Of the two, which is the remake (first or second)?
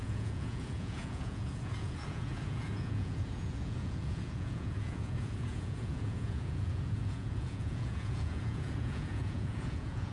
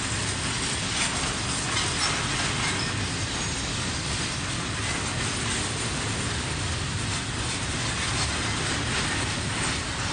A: first